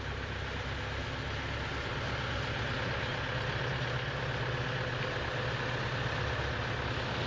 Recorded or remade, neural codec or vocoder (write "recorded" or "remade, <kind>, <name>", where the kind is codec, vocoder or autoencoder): recorded